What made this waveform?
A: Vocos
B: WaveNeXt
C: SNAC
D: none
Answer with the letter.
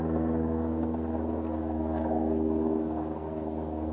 C